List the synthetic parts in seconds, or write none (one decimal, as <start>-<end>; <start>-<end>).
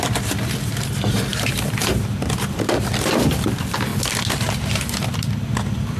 0.0-3.9; 5.6-6.0